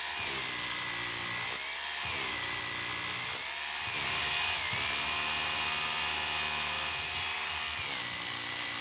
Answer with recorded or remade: recorded